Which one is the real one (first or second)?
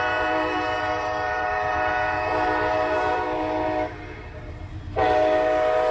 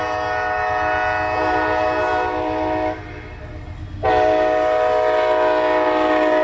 second